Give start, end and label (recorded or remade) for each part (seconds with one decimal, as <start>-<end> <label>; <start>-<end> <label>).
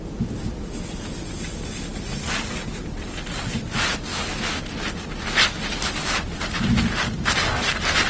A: 0.0-4.1 recorded; 4.1-4.6 remade; 4.6-8.1 recorded